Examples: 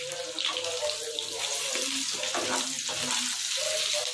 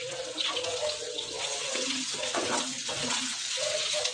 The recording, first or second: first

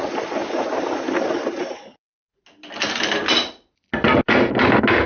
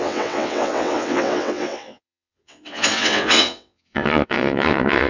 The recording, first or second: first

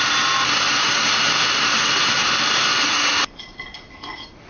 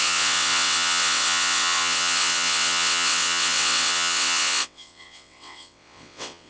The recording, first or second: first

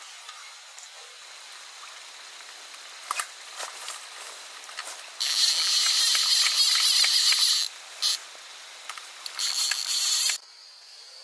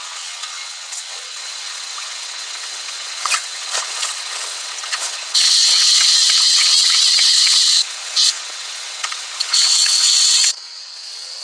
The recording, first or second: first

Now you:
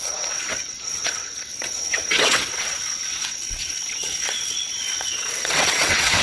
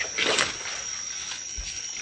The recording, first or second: second